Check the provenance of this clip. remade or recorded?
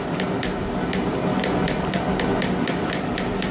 recorded